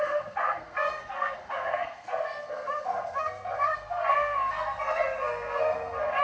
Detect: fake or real fake